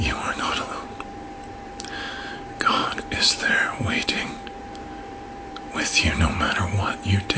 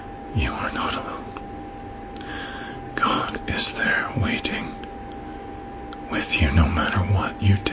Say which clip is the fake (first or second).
first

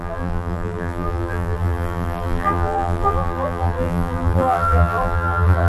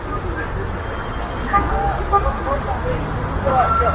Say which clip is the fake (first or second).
first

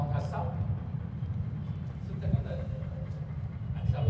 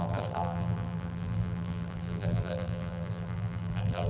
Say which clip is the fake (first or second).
second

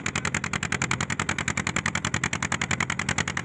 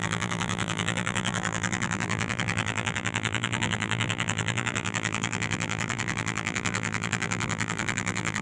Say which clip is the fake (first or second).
second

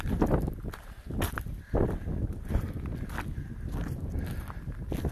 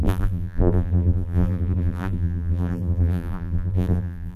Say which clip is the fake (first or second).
second